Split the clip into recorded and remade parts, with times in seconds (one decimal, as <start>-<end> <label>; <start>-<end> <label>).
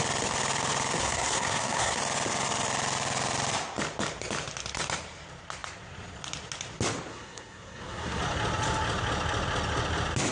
0.0-1.0 recorded; 1.0-2.0 remade; 2.0-7.1 recorded; 7.1-8.2 remade; 8.2-10.3 recorded